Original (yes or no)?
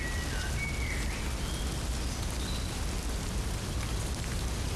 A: yes